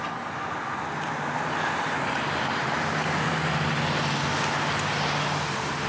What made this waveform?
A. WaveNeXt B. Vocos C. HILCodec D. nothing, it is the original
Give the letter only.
D